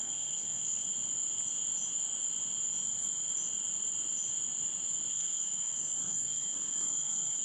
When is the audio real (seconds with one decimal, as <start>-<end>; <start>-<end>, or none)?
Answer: 0.8-5.1

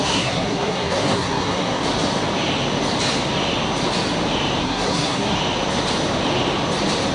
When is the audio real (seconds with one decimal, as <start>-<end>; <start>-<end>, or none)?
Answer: 1.8-4.6; 5.4-7.1

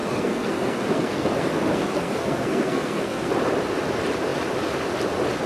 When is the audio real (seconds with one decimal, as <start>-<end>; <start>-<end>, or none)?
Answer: 3.3-5.5

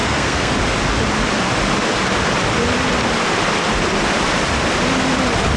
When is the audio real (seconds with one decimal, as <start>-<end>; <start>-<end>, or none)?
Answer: 0.5-5.6

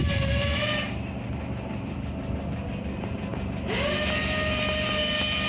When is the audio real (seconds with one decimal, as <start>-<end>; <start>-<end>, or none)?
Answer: 0.0-5.5

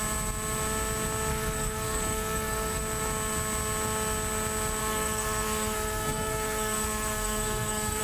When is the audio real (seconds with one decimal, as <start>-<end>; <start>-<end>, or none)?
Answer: 0.0-1.3; 2.8-4.8

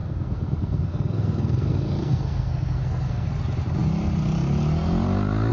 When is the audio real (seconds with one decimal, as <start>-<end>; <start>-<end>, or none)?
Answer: 3.3-5.5